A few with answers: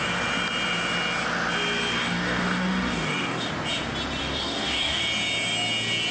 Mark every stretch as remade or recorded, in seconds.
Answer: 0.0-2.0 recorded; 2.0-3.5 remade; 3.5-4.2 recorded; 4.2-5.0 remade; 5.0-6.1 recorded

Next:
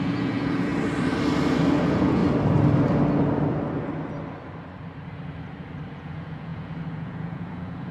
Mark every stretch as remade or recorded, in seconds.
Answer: 0.0-0.7 remade; 0.7-1.8 recorded; 1.8-2.2 remade; 2.2-5.9 recorded; 5.9-7.9 remade

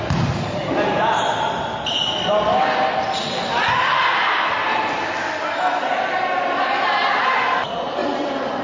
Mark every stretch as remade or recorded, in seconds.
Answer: 0.0-8.6 recorded

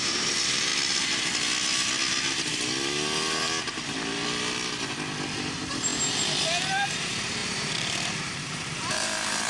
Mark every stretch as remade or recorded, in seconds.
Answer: 0.0-0.7 remade; 0.7-5.5 recorded; 5.5-5.9 remade; 5.9-7.0 recorded; 7.0-9.5 remade

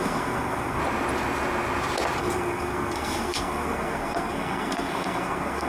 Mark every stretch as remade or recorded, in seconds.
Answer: 0.0-0.8 remade; 0.8-2.2 recorded; 2.2-5.7 remade

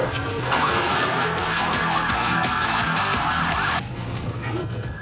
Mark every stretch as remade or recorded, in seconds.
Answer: 0.0-3.4 remade; 3.4-3.9 recorded; 3.9-5.0 remade